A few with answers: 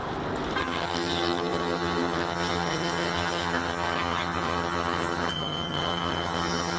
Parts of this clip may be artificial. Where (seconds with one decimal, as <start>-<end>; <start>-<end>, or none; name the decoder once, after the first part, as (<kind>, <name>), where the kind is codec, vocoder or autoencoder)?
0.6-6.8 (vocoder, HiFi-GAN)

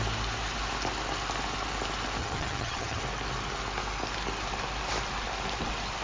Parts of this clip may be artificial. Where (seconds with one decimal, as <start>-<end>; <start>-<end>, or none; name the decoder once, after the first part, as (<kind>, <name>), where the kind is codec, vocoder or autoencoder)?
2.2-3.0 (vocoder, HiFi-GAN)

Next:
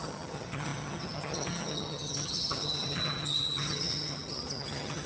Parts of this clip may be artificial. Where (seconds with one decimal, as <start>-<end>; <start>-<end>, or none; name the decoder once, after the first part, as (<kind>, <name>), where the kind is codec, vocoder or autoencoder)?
0.0-5.1 (vocoder, HiFi-GAN)

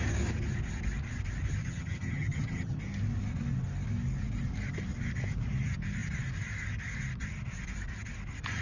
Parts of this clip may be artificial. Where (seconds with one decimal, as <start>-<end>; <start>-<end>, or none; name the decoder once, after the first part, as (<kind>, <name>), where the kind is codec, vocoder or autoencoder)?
1.6-2.8 (vocoder, HiFi-GAN)